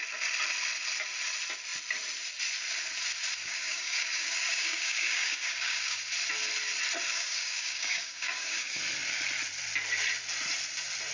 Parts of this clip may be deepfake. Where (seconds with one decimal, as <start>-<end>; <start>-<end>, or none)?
3.4-6.0; 7.1-8.8